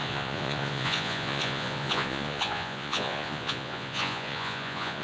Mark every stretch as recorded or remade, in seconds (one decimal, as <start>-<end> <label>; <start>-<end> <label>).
0.0-5.0 remade